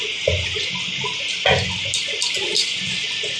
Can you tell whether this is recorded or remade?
recorded